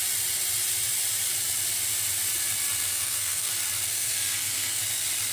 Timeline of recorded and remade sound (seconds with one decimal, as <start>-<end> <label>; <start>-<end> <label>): 0.0-2.9 recorded; 2.9-3.5 remade; 3.5-3.9 recorded; 3.9-4.8 remade; 4.8-5.3 recorded